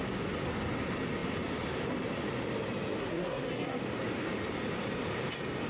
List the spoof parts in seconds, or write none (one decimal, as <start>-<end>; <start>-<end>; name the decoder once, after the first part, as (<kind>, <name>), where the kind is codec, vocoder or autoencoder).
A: 3.0-3.8 (codec, SNAC)